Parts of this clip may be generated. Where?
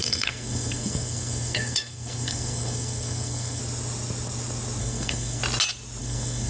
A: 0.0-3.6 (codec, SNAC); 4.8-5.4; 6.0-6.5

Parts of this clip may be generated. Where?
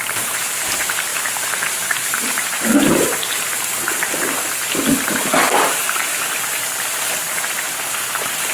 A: 0.0-6.1 (vocoder, BigVGAN v2); 7.3-8.5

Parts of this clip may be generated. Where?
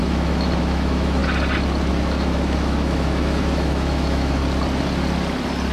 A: 0.0-1.2 (autoencoder, DAC-VAE); 1.9-4.4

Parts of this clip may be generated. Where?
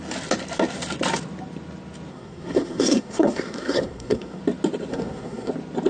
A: 2.1-4.4 (codec, SNAC); 4.9-5.5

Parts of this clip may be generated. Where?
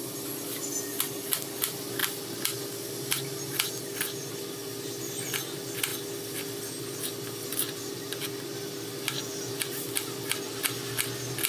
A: 8.1-9.5 (vocoder, BigVGAN v2)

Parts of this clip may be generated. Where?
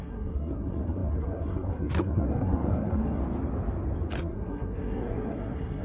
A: 0.0-3.2 (codec, SNAC); 4.2-5.8